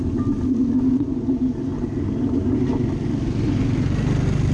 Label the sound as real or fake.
real